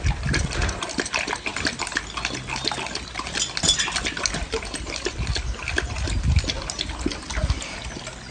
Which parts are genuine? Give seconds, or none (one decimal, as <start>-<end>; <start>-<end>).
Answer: 0.0-8.3